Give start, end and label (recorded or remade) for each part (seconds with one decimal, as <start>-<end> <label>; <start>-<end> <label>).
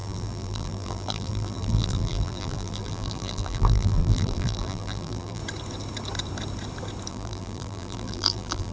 0.0-5.4 remade; 5.4-7.1 recorded; 7.1-8.7 remade